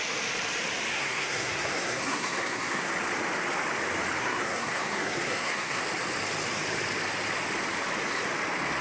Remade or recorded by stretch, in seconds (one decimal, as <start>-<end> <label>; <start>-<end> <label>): 0.0-0.9 recorded; 0.9-2.9 remade; 2.9-4.2 recorded; 4.2-5.8 remade; 5.8-8.8 recorded

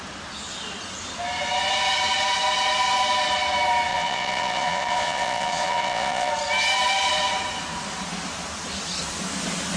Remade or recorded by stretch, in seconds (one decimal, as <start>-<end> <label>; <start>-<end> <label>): 0.0-3.9 recorded; 3.9-6.3 remade; 6.3-9.8 recorded

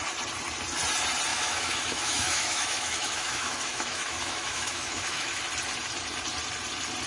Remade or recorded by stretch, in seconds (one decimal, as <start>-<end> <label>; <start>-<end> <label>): 0.0-1.3 recorded; 1.3-5.4 remade; 5.4-7.1 recorded

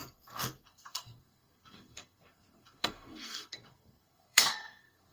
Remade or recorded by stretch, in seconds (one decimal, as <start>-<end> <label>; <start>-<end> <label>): 0.0-5.1 remade

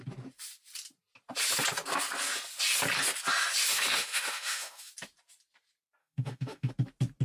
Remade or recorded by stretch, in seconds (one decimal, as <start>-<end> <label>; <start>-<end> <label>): 0.0-3.7 recorded; 3.7-4.9 remade; 4.9-6.0 recorded; 6.0-6.7 remade; 6.7-7.2 recorded

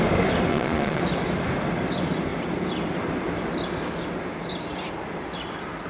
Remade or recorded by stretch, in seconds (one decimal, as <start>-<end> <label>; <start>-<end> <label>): 0.0-0.5 recorded; 0.5-1.0 remade; 1.0-5.9 recorded

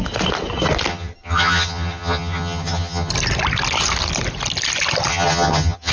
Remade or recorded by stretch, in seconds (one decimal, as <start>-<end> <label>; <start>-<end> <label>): 0.0-0.9 recorded; 0.9-3.1 remade; 3.1-5.1 recorded; 5.1-5.9 remade